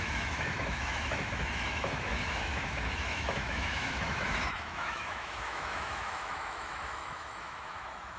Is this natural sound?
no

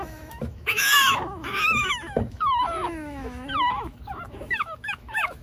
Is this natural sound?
no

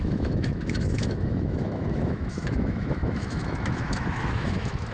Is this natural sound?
no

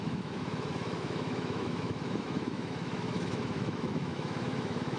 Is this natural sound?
no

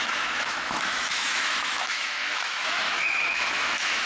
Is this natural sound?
no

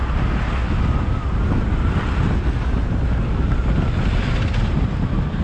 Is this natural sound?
yes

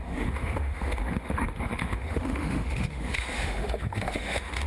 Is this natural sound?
no